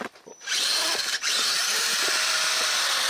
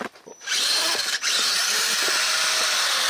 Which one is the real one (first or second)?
second